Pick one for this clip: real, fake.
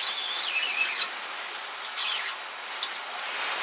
real